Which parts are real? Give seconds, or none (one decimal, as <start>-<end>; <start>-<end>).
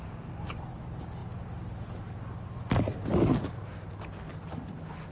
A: 0.0-5.1